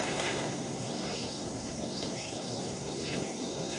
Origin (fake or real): fake